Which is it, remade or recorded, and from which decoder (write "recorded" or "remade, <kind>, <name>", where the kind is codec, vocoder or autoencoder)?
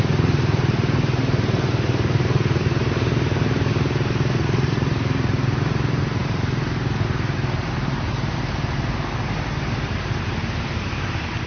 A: remade, vocoder, BigVGAN v2